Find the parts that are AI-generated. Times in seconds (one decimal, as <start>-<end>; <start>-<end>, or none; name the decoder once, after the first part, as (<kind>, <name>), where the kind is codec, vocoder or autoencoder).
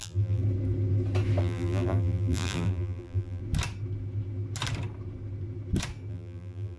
0.0-0.4 (vocoder, BigVGAN v2); 1.4-3.4; 6.1-6.8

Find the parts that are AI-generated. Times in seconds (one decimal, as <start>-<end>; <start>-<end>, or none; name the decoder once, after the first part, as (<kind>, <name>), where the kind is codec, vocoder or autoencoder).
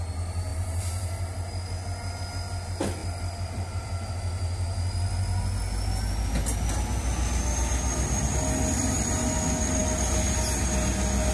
3.0-4.1 (vocoder, BigVGAN v2)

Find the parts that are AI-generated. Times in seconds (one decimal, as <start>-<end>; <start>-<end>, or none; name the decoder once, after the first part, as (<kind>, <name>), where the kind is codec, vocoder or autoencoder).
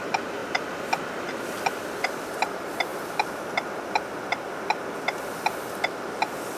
2.9-4.2 (vocoder, BigVGAN v2)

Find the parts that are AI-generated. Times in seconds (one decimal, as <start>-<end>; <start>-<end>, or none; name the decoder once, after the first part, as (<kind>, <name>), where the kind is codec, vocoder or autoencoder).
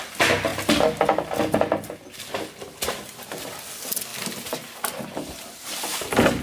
4.1-4.9 (vocoder, BigVGAN v2)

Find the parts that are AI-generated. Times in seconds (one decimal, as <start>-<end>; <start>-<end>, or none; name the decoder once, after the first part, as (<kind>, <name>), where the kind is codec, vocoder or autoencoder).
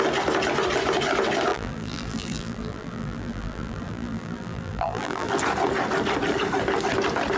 1.5-5.3 (vocoder, BigVGAN v2)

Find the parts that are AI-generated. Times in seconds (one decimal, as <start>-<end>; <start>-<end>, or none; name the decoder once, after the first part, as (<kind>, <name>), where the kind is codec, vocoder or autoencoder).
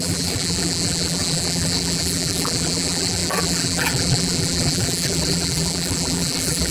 0.0-6.7 (vocoder, BigVGAN v2)